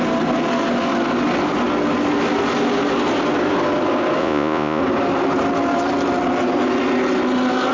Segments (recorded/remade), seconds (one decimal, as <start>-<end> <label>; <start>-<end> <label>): 0.0-4.2 recorded; 4.2-4.8 remade; 4.8-7.7 recorded